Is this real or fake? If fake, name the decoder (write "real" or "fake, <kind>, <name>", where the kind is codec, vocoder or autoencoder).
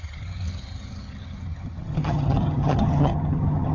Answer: fake, vocoder, HiFi-GAN